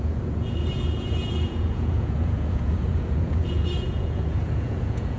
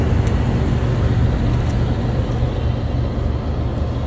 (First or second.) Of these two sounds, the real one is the second